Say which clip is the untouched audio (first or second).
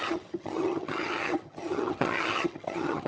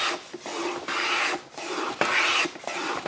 second